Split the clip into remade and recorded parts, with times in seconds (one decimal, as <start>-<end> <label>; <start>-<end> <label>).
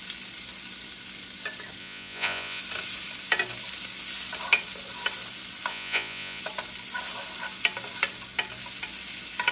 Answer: 0.0-1.8 recorded; 1.8-2.6 remade; 2.6-5.7 recorded; 5.7-6.4 remade; 6.4-9.5 recorded